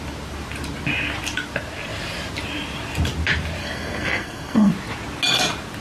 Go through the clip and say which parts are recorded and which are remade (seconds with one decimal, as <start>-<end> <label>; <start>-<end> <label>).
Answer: 0.0-3.6 recorded; 3.6-4.7 remade; 4.7-5.8 recorded